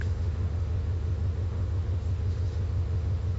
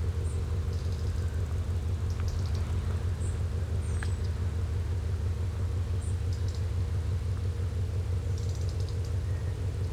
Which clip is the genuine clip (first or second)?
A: second